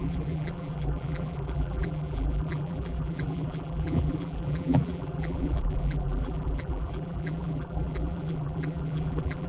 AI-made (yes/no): yes